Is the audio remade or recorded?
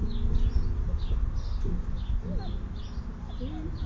recorded